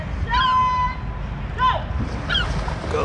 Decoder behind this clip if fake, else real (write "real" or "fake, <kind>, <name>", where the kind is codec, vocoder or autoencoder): real